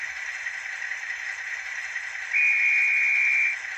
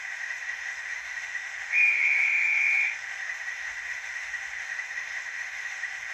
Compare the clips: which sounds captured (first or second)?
first